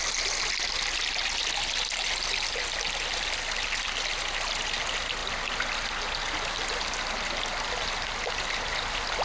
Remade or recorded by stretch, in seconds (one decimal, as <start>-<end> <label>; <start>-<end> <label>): 0.0-9.2 recorded